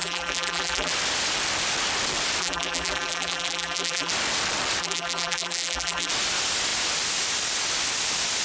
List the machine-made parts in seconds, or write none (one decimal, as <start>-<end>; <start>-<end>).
0.0-0.9; 2.4-4.1; 4.8-6.1